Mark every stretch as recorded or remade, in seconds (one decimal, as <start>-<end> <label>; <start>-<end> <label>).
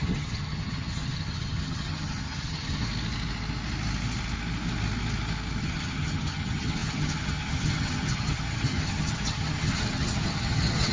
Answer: 0.0-2.9 remade; 2.9-5.6 recorded; 5.6-10.9 remade